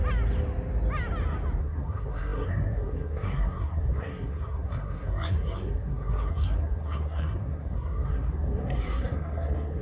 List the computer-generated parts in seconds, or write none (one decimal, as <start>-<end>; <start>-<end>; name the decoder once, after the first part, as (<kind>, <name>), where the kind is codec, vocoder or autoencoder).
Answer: 1.6-9.8 (codec, SNAC)

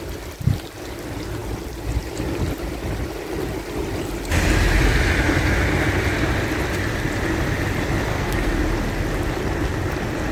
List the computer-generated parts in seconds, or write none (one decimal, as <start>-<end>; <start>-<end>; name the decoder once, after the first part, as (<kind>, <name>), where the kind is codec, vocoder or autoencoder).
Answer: 8.1-8.6 (codec, SNAC)

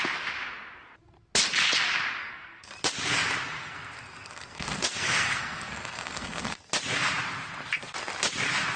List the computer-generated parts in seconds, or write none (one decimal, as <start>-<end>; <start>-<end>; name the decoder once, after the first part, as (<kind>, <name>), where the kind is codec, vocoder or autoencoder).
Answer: 2.2-2.7 (codec, SNAC); 3.6-6.7

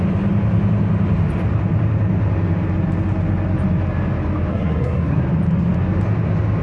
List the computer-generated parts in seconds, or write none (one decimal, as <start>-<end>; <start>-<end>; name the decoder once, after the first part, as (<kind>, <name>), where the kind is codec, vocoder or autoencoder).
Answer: 4.5-5.2 (codec, SNAC)

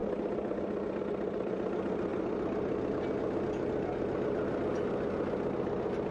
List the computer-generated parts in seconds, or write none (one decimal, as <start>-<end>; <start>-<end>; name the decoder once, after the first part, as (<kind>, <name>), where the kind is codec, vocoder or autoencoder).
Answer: none

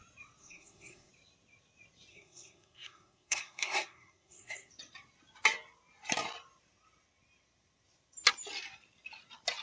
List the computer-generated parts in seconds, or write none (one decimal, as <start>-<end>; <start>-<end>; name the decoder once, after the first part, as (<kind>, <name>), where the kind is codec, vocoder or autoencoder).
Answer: 0.4-1.1 (codec, SNAC); 2.1-4.7

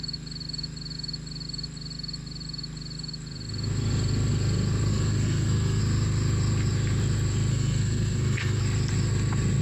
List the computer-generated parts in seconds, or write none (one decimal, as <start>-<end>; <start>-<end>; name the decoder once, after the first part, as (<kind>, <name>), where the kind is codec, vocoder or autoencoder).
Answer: 4.9-5.8 (codec, SNAC); 7.5-8.6